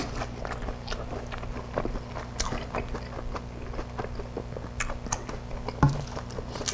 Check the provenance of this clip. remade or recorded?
recorded